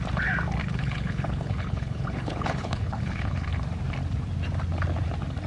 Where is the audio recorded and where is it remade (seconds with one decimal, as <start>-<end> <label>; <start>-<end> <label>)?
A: 0.0-0.6 recorded; 0.6-3.5 remade; 3.5-5.5 recorded